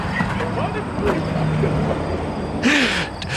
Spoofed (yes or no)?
no